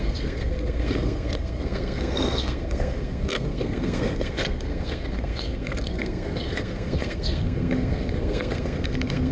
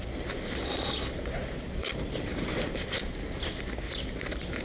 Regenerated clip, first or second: first